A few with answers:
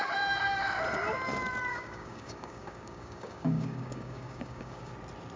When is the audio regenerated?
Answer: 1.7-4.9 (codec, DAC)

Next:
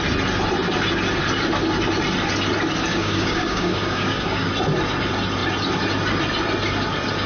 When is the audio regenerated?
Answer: 2.9-4.5 (codec, DAC)